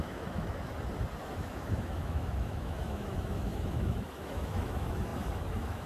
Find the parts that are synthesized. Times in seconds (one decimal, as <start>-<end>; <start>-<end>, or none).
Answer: 0.0-0.7; 1.2-5.9